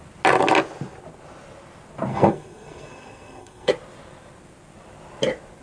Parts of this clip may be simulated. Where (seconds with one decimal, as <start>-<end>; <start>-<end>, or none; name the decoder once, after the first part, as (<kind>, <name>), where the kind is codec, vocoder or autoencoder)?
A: 2.1-3.7 (codec, SNAC)